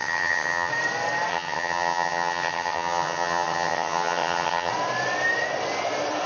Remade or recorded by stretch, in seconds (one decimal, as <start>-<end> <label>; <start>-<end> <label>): 0.0-0.7 remade; 0.7-1.3 recorded; 1.3-4.7 remade; 4.7-6.3 recorded